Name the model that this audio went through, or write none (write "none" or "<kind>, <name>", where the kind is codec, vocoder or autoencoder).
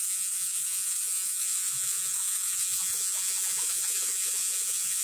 vocoder, Vocos